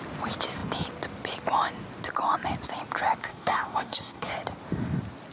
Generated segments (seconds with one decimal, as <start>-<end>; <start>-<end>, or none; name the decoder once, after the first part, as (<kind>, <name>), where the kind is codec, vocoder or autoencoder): 3.2-4.3 (codec, SNAC)